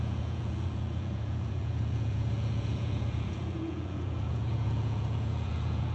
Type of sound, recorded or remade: remade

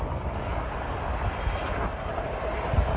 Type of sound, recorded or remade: recorded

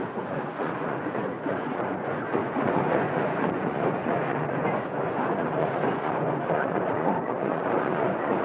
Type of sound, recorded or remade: remade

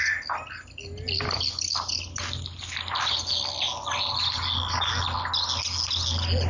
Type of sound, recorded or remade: recorded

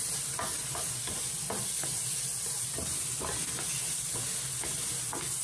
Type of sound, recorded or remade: recorded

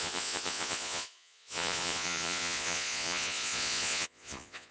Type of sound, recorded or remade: remade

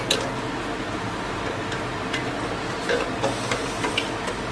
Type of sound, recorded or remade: recorded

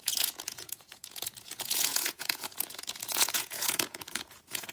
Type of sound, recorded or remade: remade